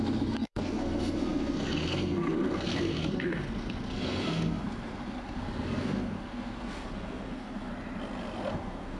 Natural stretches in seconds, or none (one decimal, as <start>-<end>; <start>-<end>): 7.7-8.5

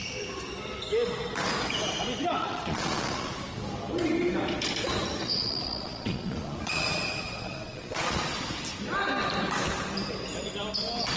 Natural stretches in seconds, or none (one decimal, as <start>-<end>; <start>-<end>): 0.0-2.4; 3.3-5.2; 8.3-11.2

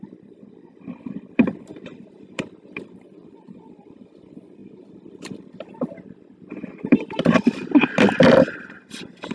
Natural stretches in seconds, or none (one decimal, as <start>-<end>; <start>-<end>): 4.6-6.7

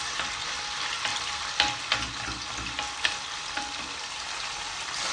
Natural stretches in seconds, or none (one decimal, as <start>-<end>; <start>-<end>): 0.0-5.1

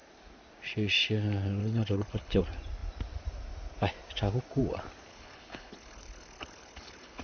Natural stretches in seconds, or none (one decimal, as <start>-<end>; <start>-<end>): 0.0-1.6; 2.4-5.1

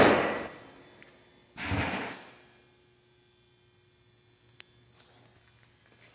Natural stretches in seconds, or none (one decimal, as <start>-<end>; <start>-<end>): 0.0-6.1

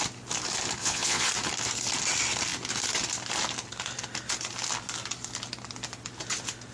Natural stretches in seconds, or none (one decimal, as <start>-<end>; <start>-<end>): 0.0-0.8; 1.3-6.7

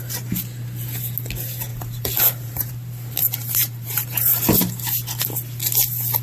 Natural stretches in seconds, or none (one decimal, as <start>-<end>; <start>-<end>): 0.0-1.7; 2.7-3.2; 4.5-6.2